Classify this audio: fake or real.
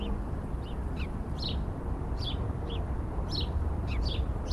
real